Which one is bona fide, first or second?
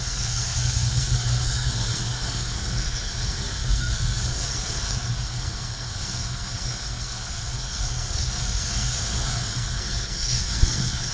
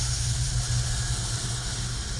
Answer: second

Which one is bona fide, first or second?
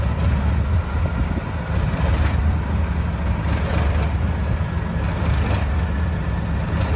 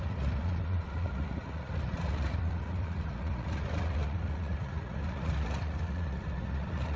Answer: first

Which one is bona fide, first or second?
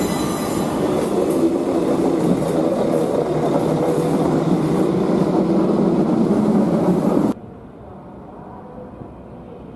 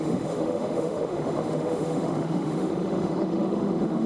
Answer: first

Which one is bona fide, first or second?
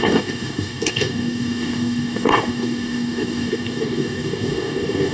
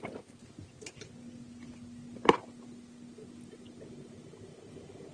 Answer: second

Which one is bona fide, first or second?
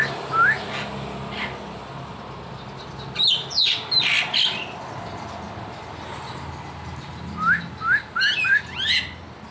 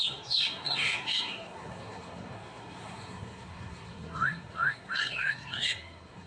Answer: first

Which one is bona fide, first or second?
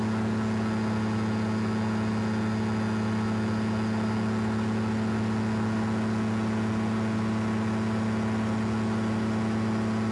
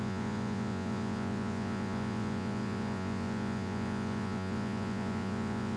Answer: first